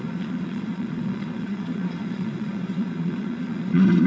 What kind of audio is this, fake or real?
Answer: fake